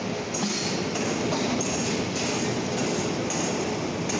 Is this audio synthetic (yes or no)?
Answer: no